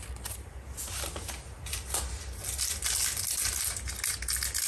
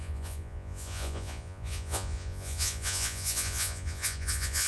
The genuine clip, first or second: first